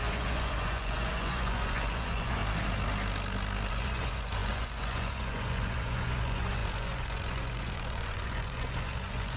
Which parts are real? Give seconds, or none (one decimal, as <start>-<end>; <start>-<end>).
2.4-3.7

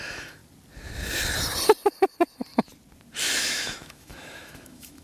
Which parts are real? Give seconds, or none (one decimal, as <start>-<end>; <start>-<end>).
0.4-3.4

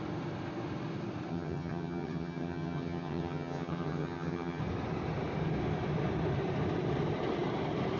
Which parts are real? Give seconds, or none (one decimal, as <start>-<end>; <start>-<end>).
0.0-1.3; 4.6-8.0